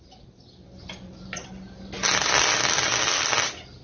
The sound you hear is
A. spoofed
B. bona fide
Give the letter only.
B